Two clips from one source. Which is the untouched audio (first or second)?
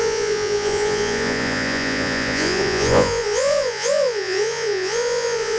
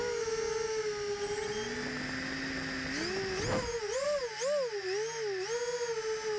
second